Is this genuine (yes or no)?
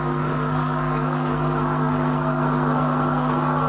no